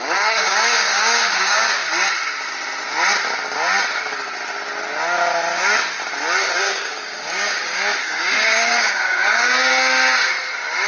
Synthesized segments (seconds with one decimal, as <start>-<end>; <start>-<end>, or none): 0.0-1.8; 6.6-9.7